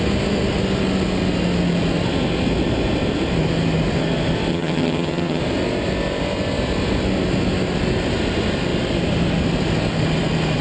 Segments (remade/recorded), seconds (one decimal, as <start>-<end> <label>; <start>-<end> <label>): 0.0-4.5 recorded; 4.5-5.4 remade; 5.4-10.6 recorded